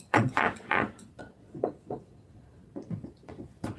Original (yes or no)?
no